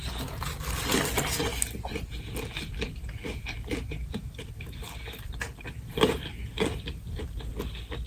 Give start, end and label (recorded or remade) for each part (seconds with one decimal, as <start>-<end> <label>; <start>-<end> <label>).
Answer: 0.0-8.1 recorded